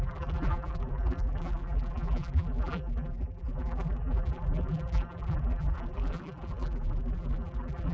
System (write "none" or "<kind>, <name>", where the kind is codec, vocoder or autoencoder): vocoder, BigVGAN v2